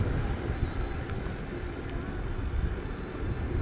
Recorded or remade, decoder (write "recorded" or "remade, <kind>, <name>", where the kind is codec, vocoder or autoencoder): recorded